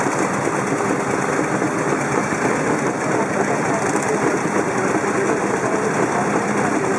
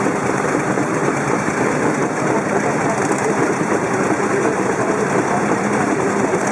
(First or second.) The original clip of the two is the first